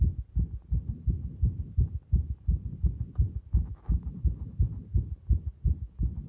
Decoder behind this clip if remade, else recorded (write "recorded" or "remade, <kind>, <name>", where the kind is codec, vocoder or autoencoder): recorded